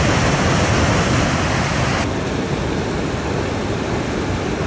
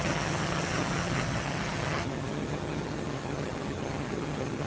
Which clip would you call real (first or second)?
first